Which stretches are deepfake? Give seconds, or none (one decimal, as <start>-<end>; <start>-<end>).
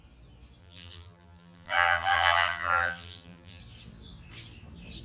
0.6-3.6